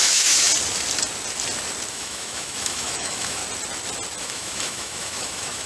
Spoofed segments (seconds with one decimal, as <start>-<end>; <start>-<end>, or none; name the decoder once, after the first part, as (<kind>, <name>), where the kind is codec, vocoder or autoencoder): 0.0-0.5 (autoencoder, DAC-VAE); 1.9-3.4; 4.2-5.7

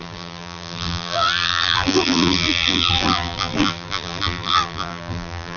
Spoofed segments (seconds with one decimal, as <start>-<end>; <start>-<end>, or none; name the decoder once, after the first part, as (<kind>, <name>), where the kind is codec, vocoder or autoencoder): 0.0-5.6 (vocoder, BigVGAN v2)

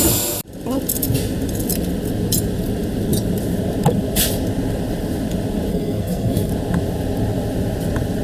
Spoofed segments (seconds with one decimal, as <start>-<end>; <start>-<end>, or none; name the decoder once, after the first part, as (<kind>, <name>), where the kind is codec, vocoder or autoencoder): 5.7-6.5 (codec, SNAC)

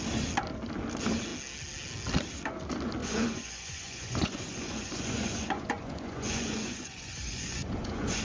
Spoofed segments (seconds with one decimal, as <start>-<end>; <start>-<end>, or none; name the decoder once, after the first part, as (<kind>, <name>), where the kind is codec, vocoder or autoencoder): 3.0-8.2 (vocoder, Vocos)

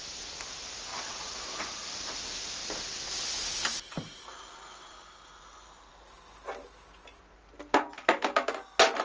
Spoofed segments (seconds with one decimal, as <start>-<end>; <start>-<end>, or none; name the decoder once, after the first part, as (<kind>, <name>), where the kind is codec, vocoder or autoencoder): 0.9-1.9 (vocoder, Vocos)

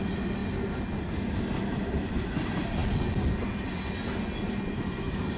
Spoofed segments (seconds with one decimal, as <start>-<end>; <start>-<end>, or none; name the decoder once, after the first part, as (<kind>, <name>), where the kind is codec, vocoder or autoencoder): none

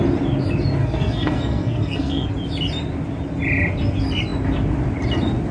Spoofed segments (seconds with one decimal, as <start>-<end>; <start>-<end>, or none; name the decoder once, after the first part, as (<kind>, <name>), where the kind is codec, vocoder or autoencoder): 0.8-2.3 (codec, SNAC)